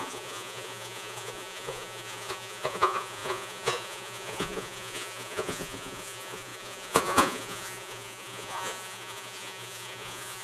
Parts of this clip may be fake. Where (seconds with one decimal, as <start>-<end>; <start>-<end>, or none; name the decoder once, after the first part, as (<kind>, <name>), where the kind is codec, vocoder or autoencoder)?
0.0-10.4 (vocoder, Vocos)